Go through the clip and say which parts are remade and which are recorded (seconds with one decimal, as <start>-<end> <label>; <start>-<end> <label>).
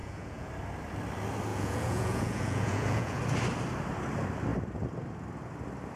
0.0-0.5 remade; 0.5-1.5 recorded; 1.5-3.2 remade; 3.2-6.0 recorded